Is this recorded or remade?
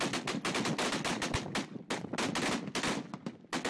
recorded